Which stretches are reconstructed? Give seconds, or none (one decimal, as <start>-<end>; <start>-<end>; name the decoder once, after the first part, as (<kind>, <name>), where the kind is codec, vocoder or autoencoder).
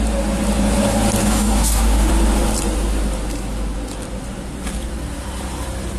1.2-2.1 (codec, DAC)